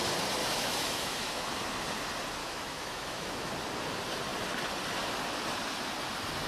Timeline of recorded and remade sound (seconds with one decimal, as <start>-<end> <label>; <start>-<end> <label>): 0.0-0.4 recorded; 0.4-1.5 remade; 1.5-2.4 recorded; 2.4-3.5 remade; 3.5-6.5 recorded